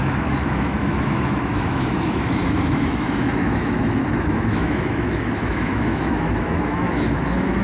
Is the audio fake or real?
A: fake